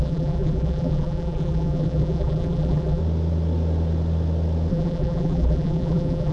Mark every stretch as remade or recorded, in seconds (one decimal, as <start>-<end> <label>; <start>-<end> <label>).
0.0-3.0 remade; 3.0-4.7 recorded; 4.7-6.3 remade